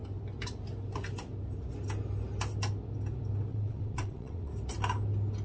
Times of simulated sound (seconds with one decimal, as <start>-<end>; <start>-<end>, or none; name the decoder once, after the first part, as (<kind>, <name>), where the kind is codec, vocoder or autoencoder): 3.5-4.5 (vocoder, WaveNeXt)